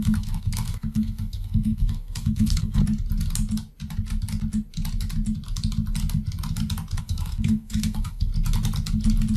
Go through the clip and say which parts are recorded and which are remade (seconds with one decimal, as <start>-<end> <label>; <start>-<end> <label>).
0.0-2.8 remade; 2.8-7.0 recorded; 7.0-8.3 remade; 8.3-9.4 recorded

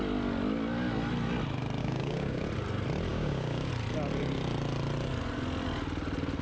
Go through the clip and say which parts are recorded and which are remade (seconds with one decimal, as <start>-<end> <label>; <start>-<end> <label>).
0.0-1.8 recorded; 1.8-2.4 remade; 2.4-3.1 recorded; 3.1-3.7 remade; 3.7-6.4 recorded

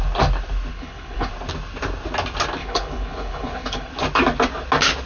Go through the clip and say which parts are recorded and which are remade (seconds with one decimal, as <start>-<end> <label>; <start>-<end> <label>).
0.0-0.7 recorded; 0.7-1.3 remade; 1.3-2.6 recorded; 2.6-3.9 remade; 3.9-5.1 recorded

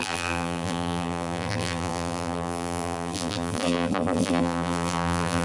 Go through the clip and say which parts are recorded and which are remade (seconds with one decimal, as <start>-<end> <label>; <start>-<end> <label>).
0.0-5.4 remade

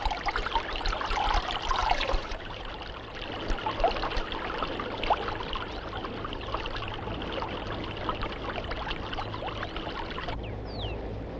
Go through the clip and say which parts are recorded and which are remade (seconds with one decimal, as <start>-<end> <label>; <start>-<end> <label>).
0.0-1.8 recorded; 1.8-2.7 remade; 2.7-11.4 recorded

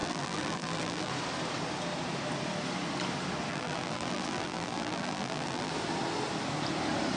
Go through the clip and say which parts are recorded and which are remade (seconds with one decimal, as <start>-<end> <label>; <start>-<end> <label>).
0.0-1.1 remade; 1.1-3.5 recorded; 3.5-5.7 remade; 5.7-7.2 recorded